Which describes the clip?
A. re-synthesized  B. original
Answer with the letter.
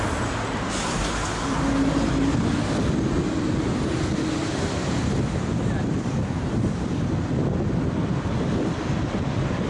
B